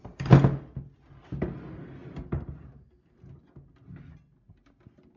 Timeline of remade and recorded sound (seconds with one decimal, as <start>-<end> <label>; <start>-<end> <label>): 0.0-5.2 recorded

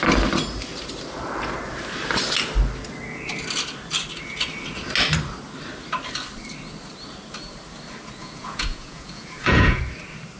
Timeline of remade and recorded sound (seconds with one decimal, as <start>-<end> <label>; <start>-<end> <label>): 0.0-8.2 recorded; 8.2-9.8 remade; 9.8-10.4 recorded

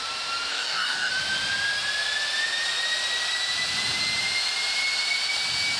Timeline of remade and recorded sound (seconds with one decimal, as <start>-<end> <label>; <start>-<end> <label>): 0.0-0.5 recorded; 0.5-1.1 remade; 1.1-5.8 recorded